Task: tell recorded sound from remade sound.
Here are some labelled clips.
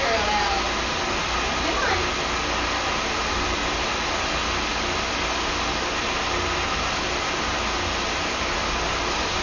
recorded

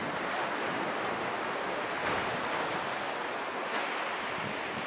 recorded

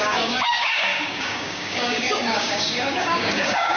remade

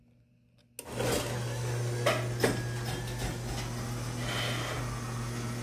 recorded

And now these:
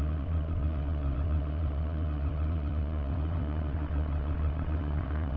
remade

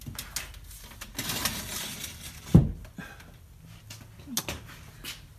recorded